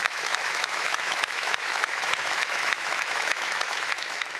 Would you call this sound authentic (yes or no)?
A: no